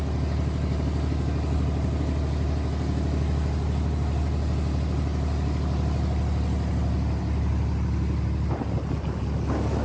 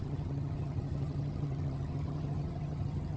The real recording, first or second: first